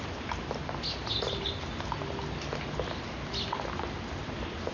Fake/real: real